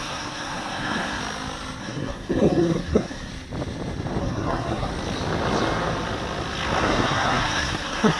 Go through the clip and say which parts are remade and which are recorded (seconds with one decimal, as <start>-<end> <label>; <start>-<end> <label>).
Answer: 0.0-1.2 remade; 1.2-1.8 recorded; 1.8-3.3 remade; 3.3-4.2 recorded; 4.2-4.9 remade; 4.9-6.8 recorded; 6.8-8.2 remade